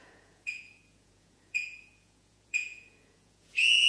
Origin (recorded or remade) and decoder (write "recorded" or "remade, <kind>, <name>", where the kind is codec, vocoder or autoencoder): remade, vocoder, Vocos